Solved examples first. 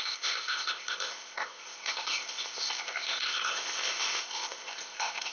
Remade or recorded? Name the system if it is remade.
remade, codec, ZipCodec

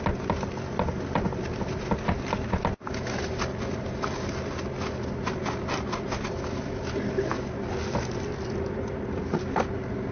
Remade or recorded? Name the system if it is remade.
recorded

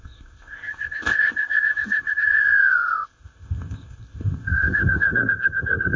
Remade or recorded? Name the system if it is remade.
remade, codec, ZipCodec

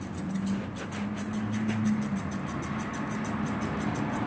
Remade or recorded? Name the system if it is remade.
recorded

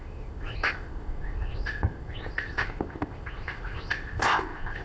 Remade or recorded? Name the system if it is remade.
remade, codec, ZipCodec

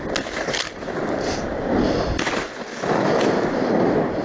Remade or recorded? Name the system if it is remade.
recorded